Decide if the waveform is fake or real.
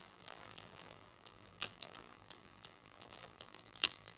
fake